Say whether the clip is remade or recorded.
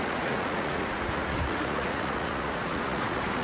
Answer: remade